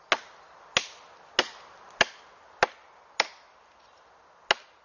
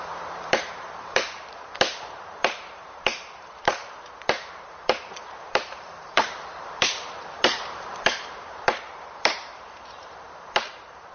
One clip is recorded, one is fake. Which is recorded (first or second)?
first